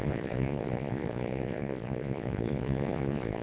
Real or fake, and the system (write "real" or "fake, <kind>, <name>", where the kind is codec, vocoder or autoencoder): fake, vocoder, Vocos